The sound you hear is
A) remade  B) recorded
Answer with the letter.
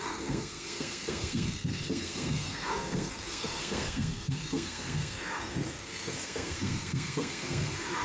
A